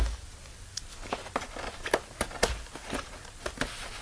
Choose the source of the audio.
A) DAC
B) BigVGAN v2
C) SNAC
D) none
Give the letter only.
D